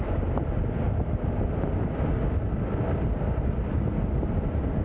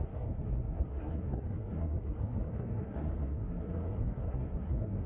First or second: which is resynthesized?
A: second